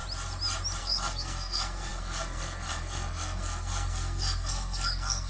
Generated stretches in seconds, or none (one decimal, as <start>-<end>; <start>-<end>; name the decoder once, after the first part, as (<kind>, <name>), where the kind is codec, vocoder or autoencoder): 0.8-5.3 (codec, SNAC)